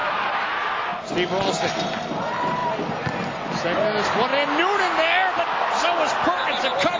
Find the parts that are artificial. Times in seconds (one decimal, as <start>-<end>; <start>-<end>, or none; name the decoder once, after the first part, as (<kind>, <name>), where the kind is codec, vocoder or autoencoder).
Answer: 0.0-1.0 (vocoder, BigVGAN v2)